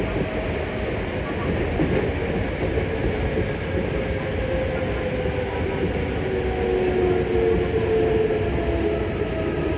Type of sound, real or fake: real